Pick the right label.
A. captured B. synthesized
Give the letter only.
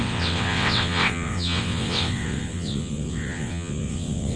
B